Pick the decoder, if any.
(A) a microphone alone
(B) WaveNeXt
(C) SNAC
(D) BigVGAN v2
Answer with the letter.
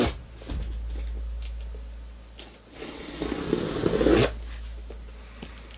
A